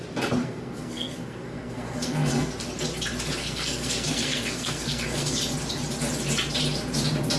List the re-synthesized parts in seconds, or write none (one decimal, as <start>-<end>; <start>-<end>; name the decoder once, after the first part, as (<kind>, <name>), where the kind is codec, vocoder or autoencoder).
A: 0.4-2.5 (codec, SNAC); 3.4-5.4